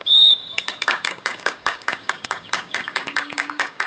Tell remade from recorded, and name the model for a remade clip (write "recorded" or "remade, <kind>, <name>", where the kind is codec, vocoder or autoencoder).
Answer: remade, codec, DAC